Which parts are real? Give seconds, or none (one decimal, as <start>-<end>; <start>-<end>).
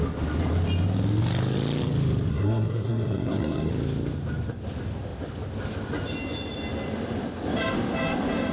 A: 0.0-2.3; 3.7-8.5